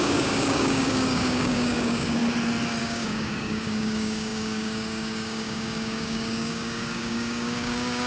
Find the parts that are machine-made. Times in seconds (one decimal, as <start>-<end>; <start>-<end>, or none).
0.0-2.2; 2.8-8.1